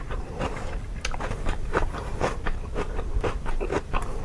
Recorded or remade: remade